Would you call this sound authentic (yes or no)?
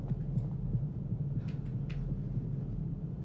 yes